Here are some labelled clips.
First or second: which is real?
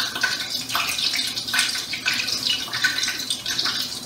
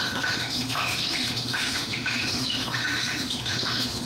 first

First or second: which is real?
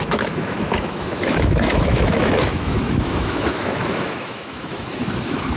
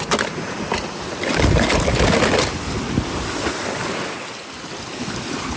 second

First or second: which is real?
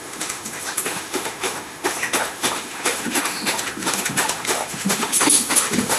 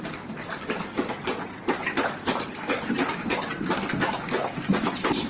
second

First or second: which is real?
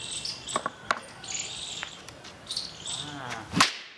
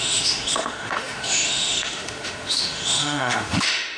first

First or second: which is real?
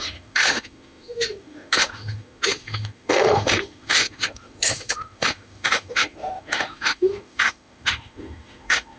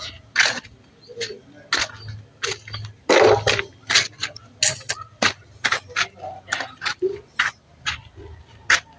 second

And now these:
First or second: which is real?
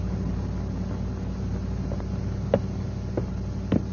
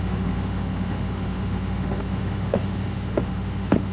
first